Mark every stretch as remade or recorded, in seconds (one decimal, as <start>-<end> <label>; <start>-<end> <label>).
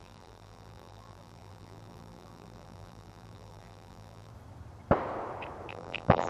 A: 0.0-4.3 remade; 4.3-5.7 recorded; 5.7-6.3 remade